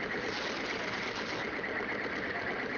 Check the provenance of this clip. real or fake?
real